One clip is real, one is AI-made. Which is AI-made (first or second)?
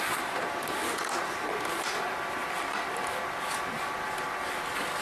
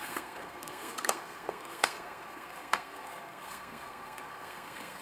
second